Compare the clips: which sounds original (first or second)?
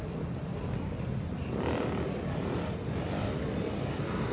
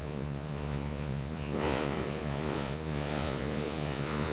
first